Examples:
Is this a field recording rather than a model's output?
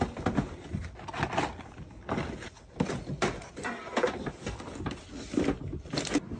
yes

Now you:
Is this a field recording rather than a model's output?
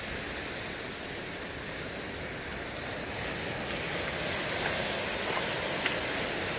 yes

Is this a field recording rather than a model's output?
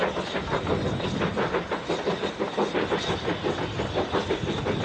yes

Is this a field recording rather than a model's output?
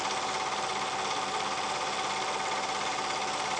yes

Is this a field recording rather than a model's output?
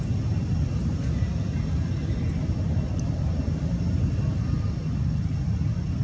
yes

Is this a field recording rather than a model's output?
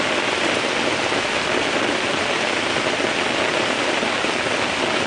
yes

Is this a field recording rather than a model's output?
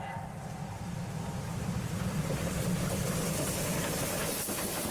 no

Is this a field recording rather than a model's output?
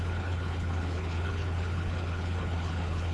no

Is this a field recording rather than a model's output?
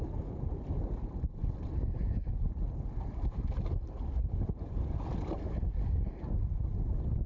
yes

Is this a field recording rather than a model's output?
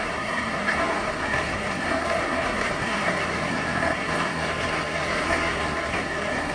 no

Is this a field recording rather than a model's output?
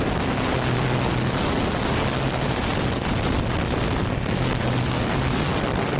yes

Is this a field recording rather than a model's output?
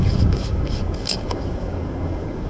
no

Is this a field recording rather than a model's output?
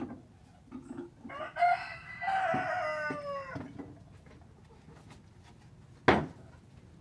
yes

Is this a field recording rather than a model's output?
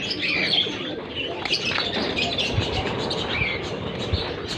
yes